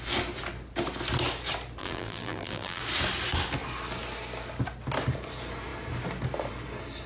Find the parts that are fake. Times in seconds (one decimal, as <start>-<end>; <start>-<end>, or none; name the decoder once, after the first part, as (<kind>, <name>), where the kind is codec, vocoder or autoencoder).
1.8-2.8 (vocoder, BigVGAN v2)